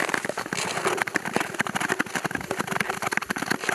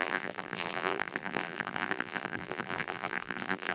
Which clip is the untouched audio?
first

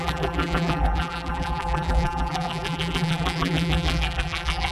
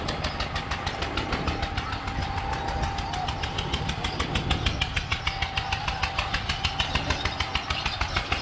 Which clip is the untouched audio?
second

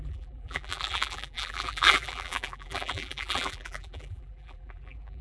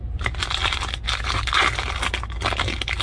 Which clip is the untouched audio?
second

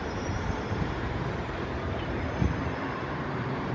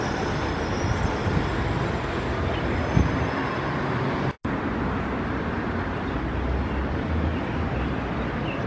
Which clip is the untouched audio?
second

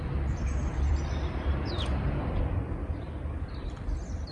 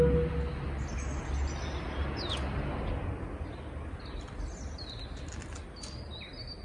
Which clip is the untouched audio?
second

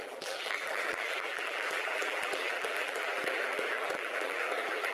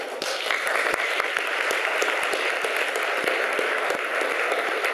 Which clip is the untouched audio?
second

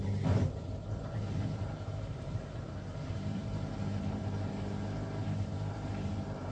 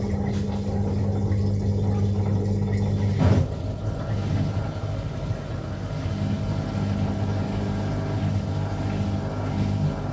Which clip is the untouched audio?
second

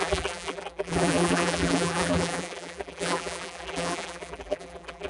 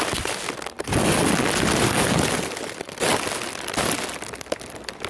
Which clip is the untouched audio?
second